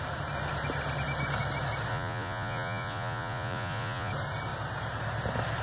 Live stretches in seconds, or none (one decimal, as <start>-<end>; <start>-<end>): 0.0-1.9; 4.1-5.6